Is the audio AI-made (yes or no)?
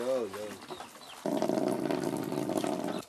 no